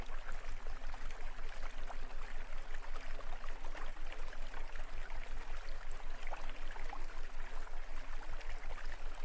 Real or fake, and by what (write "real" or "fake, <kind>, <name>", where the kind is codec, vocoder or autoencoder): real